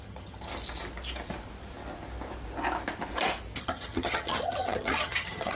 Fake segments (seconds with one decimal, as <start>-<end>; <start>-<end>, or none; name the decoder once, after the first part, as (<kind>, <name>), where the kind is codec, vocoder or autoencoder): 0.0-0.5 (vocoder, HiFi-GAN); 3.6-5.6